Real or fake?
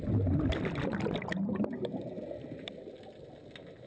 real